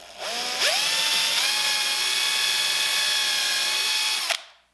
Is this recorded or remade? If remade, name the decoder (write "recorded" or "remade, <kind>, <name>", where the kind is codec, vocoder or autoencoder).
recorded